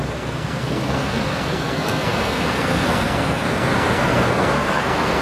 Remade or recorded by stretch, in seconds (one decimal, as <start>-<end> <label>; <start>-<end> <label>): 0.0-5.2 remade